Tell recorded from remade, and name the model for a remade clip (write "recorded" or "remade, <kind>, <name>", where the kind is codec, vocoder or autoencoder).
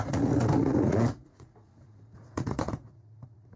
remade, vocoder, Vocos